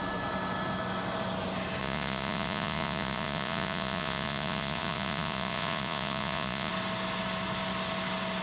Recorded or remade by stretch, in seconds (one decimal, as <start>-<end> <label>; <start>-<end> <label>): 0.0-1.8 recorded; 1.8-6.7 remade; 6.7-8.4 recorded